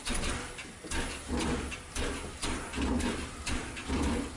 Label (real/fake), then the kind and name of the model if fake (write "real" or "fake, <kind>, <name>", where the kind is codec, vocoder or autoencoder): real